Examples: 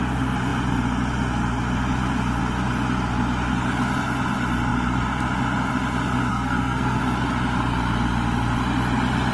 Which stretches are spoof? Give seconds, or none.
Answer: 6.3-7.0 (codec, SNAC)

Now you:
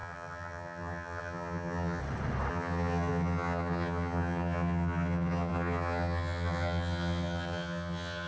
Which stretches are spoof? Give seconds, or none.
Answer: 0.0-2.0 (vocoder, HiFi-GAN); 2.5-8.3